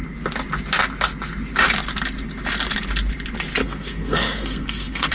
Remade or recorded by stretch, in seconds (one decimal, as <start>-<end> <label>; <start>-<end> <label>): 0.0-3.6 recorded; 3.6-5.1 remade

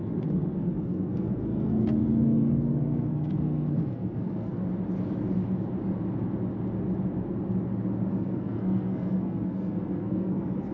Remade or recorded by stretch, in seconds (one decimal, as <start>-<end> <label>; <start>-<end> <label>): 0.0-4.5 remade; 4.5-8.1 recorded; 8.1-10.7 remade

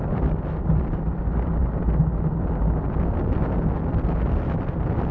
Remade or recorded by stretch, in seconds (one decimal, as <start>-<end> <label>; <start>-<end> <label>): 0.0-5.1 recorded

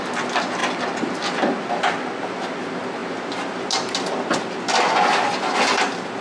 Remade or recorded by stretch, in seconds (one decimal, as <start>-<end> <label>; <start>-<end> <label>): 0.0-6.2 recorded

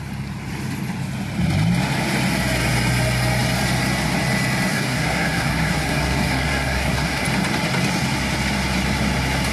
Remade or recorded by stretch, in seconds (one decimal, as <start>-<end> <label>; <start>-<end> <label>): 0.0-4.7 recorded; 4.7-7.2 remade; 7.2-9.5 recorded

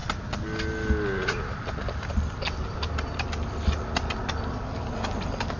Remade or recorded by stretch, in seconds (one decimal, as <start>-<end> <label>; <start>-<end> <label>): 0.0-5.6 recorded